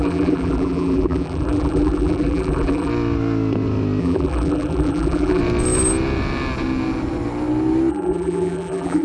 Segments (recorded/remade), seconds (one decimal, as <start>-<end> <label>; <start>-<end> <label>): 0.0-2.9 remade; 2.9-4.0 recorded; 4.0-5.4 remade; 5.4-7.9 recorded; 7.9-9.0 remade